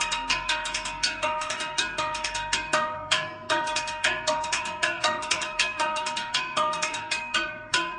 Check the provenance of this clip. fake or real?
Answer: fake